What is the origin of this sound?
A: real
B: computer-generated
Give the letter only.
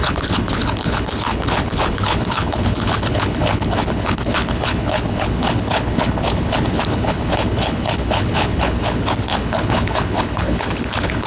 B